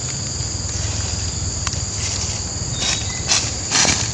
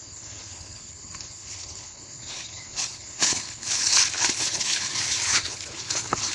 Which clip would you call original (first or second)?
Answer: first